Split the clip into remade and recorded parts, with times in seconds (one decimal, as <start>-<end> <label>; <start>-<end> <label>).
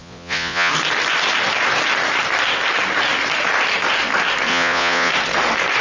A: 0.0-0.7 remade; 0.7-4.5 recorded; 4.5-5.1 remade; 5.1-5.8 recorded